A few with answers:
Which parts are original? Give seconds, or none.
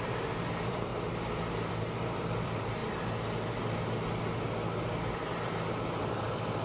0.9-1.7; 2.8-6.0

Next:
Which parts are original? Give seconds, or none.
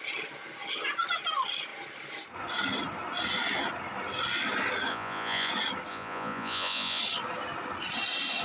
0.0-4.9; 5.5-5.9; 7.0-8.4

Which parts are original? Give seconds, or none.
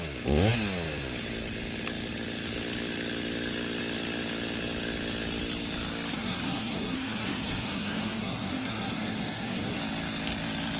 0.0-6.1; 9.8-10.8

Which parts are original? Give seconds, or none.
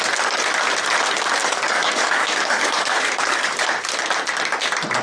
0.0-1.4; 3.7-5.0